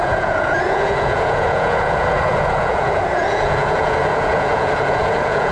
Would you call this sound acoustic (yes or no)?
no